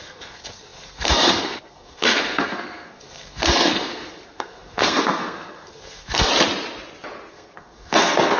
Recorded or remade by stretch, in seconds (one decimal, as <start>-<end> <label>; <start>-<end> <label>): 0.0-6.3 remade; 6.3-7.3 recorded; 7.3-8.4 remade